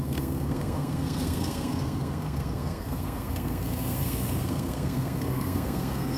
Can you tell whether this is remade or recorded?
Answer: remade